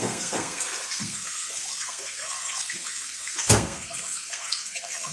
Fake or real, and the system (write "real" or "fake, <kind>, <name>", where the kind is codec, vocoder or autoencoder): fake, codec, SNAC